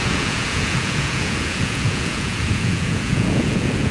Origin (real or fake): fake